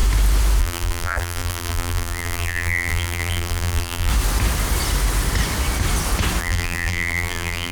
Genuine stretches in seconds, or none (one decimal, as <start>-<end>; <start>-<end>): 0.0-0.6; 4.1-6.4